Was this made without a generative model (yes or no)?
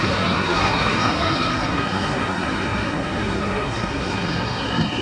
no